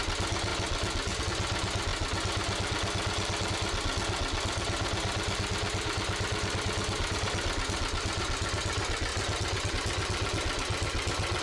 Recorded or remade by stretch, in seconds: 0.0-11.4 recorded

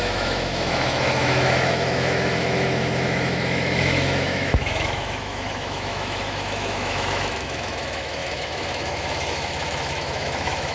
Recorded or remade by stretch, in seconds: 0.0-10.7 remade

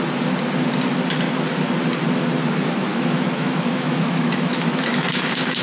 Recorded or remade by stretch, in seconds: 0.0-2.9 recorded; 2.9-5.6 remade

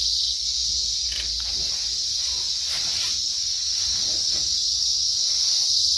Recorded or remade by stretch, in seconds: 0.0-4.8 recorded; 4.8-5.3 remade; 5.3-6.0 recorded

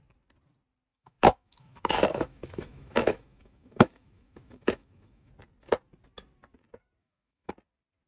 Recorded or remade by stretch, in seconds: 0.0-0.9 recorded; 0.9-5.3 remade; 5.3-7.0 recorded; 7.0-7.5 remade; 7.5-8.1 recorded